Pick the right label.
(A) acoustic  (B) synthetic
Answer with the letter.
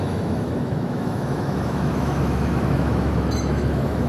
B